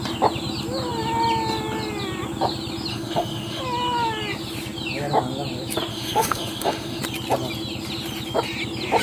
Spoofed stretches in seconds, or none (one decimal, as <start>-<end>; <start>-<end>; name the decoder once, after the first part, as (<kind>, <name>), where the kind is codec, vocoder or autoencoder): 2.9-3.6 (autoencoder, DAC-VAE); 5.9-7.0